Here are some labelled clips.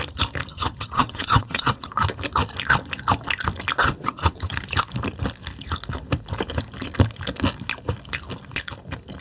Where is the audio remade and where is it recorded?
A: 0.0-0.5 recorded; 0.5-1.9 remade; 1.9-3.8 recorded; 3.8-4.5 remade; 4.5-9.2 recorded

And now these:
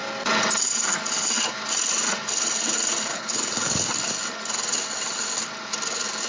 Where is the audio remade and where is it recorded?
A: 0.0-3.1 recorded; 3.1-3.9 remade; 3.9-6.3 recorded

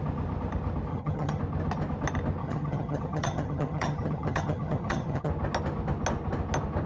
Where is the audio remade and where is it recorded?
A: 0.0-0.9 recorded; 0.9-1.4 remade; 1.4-2.4 recorded; 2.4-5.3 remade; 5.3-6.9 recorded

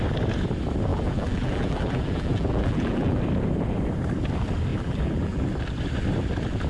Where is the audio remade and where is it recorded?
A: 0.0-0.9 recorded; 0.9-3.2 remade; 3.2-4.7 recorded; 4.7-5.4 remade; 5.4-6.7 recorded